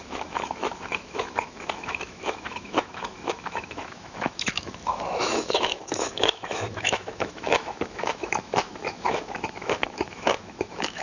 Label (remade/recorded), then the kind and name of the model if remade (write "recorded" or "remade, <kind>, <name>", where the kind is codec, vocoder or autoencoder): remade, autoencoder, DAC-VAE